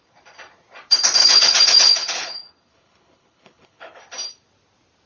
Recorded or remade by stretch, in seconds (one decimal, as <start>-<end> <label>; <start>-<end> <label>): 0.0-1.2 recorded; 1.2-4.0 remade; 4.0-5.1 recorded